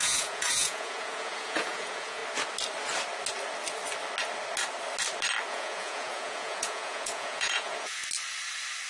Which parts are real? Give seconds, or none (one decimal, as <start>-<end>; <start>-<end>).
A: 2.2-5.5; 8.0-8.9

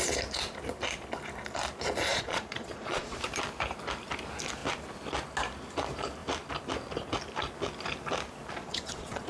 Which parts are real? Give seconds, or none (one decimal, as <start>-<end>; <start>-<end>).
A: 0.0-2.1; 3.2-8.6

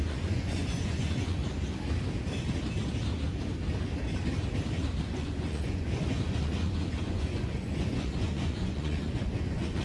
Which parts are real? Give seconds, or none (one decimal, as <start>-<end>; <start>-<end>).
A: 1.4-5.0